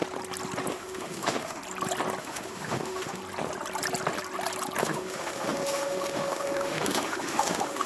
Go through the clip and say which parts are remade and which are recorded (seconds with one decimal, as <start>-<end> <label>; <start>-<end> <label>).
0.0-0.7 recorded; 0.7-1.6 remade; 1.6-2.2 recorded; 2.2-3.2 remade; 3.2-4.8 recorded; 4.8-7.9 remade